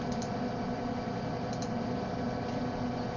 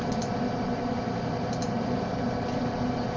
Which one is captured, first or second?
first